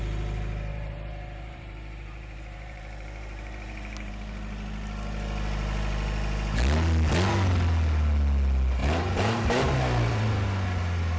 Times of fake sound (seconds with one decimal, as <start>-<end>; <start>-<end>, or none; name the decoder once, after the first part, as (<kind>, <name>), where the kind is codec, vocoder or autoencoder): 0.7-4.1 (vocoder, BigVGAN v2); 8.8-10.3